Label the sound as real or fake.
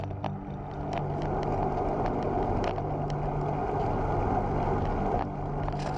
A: real